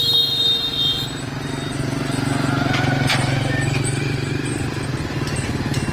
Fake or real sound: real